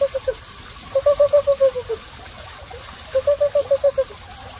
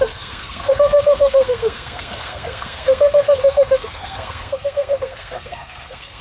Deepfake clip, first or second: second